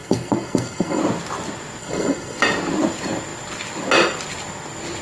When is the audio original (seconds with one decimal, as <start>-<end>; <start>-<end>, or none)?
1.0-1.8; 2.4-5.0